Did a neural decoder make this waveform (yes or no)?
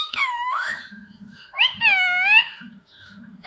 yes